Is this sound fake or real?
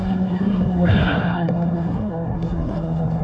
fake